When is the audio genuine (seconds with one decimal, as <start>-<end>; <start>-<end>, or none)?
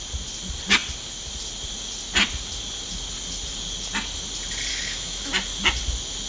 0.0-4.7; 5.3-6.3